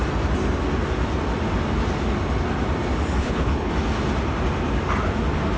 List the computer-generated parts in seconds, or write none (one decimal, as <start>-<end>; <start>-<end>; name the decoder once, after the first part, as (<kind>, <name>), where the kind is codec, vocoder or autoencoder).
3.2-3.7 (codec, HILCodec)